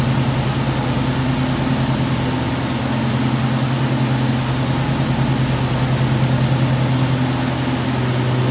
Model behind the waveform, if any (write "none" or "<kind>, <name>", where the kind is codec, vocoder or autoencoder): none